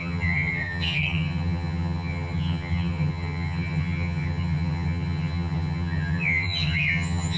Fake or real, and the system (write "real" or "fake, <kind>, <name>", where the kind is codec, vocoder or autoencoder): fake, vocoder, HiFi-GAN